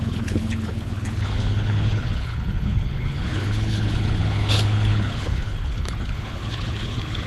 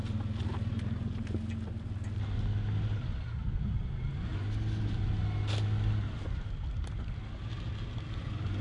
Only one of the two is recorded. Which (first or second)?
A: second